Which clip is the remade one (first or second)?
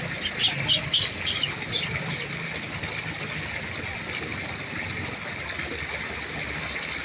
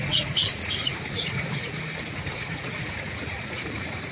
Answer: second